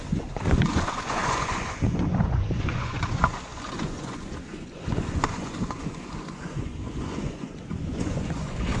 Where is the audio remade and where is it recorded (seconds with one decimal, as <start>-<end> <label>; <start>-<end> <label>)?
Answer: 0.0-8.8 remade